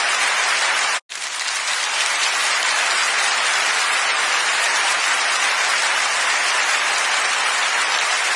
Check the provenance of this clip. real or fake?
real